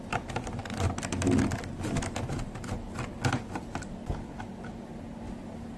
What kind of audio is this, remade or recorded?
recorded